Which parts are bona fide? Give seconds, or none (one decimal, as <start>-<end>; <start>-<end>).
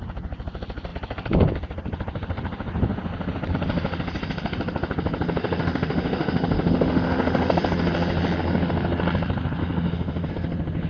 0.0-5.4; 7.6-9.6; 10.3-10.9